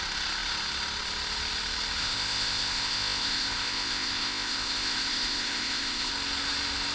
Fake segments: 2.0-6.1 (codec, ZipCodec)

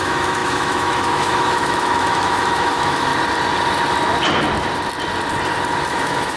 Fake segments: 0.0-3.1 (autoencoder, DAC-VAE); 5.9-6.4

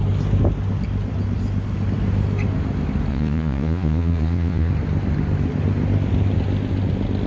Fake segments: 3.1-4.7 (vocoder, Vocos)

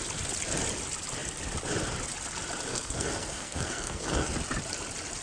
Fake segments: 2.7-4.3 (codec, SNAC)

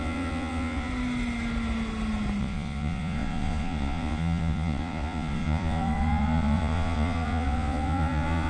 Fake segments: 0.0-0.9 (vocoder, Vocos); 2.4-8.5

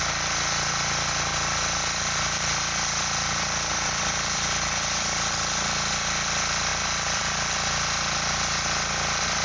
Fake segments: 1.3-5.5 (vocoder, BigVGAN v2); 6.7-7.2